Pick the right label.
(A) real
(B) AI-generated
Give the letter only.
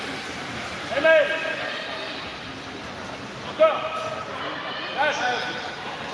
A